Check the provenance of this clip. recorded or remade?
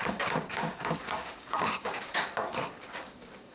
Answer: remade